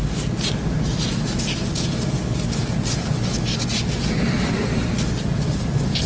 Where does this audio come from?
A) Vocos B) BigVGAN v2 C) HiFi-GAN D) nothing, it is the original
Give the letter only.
D